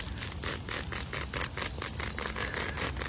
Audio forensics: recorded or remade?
recorded